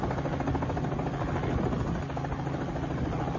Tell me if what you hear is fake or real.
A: real